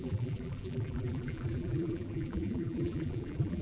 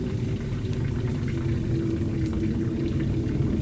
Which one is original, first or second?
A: second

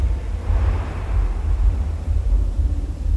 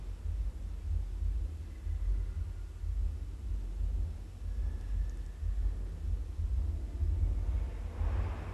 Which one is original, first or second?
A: second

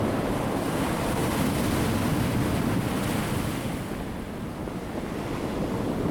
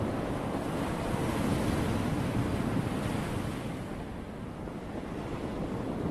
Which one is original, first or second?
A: first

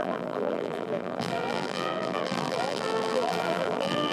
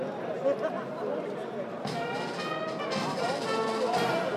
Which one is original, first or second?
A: second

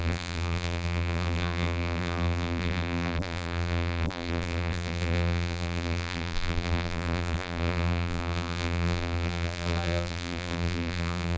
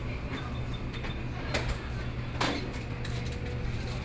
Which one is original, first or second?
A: second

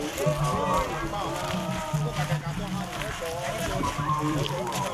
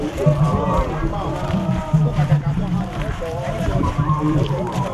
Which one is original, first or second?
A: first